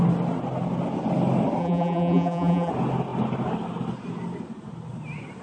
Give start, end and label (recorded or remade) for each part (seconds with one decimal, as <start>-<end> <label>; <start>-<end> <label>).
0.0-1.6 recorded; 1.6-2.7 remade; 2.7-5.4 recorded